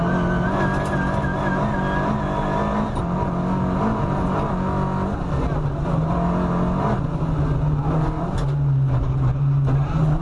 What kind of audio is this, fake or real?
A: real